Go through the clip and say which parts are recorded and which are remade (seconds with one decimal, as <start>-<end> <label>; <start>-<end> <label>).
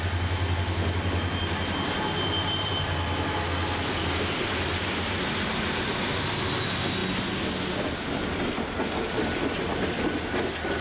0.0-10.8 recorded